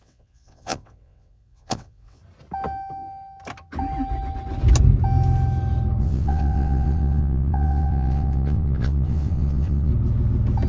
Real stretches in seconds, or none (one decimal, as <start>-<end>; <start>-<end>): 2.2-6.0; 9.9-10.7